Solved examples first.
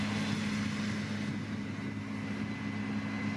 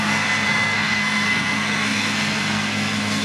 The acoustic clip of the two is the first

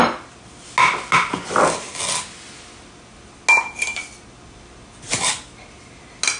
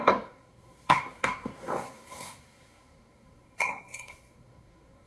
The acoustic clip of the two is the first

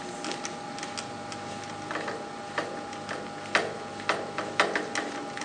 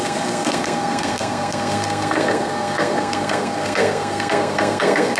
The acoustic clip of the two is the first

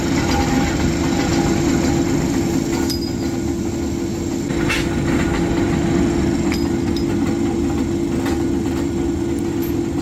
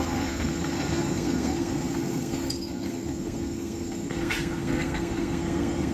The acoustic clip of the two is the first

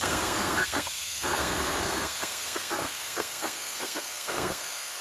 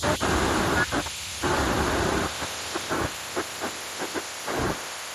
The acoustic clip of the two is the second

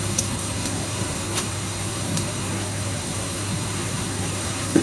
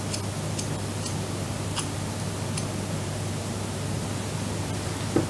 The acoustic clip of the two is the second